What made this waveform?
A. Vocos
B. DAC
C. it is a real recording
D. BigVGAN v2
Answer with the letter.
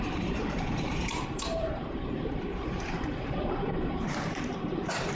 D